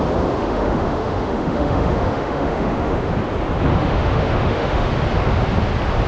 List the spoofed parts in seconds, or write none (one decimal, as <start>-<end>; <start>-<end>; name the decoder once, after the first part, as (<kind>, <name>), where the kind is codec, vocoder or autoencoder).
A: 0.4-3.1 (autoencoder, DAC-VAE); 3.7-4.9